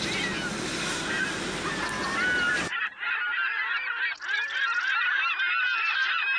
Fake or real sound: real